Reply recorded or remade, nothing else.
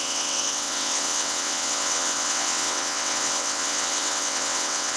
remade